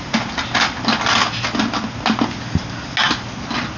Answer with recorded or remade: recorded